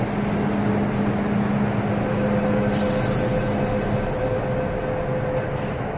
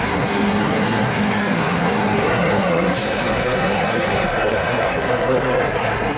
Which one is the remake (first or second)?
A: second